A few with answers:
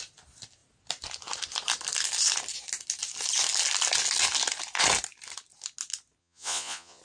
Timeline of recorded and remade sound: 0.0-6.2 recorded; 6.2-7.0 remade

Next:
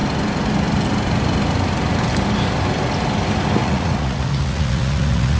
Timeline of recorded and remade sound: 0.0-3.6 recorded; 3.6-5.4 remade

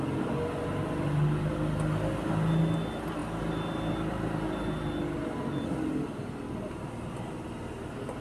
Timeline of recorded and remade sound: 0.0-8.2 recorded

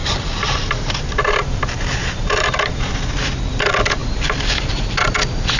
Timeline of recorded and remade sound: 0.0-2.9 remade; 2.9-4.0 recorded; 4.0-4.5 remade; 4.5-5.6 recorded